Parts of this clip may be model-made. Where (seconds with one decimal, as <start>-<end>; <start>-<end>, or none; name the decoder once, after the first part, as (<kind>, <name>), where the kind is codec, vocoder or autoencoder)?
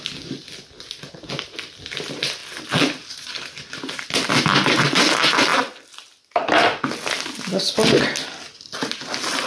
none